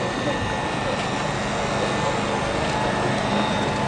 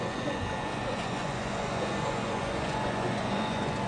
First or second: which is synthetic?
second